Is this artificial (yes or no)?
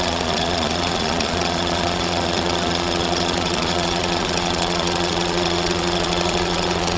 yes